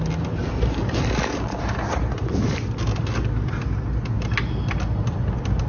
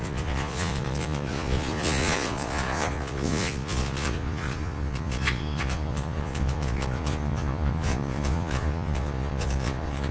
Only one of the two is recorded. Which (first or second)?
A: first